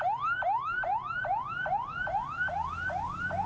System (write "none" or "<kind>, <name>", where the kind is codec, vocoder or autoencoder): none